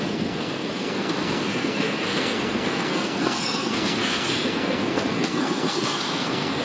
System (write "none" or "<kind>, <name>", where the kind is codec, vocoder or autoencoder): codec, SNAC